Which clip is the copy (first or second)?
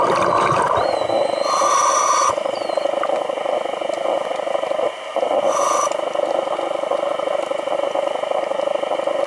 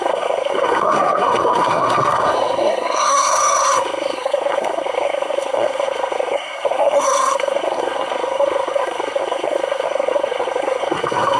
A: second